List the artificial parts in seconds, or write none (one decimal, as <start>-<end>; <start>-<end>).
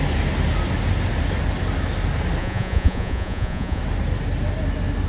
2.4-3.8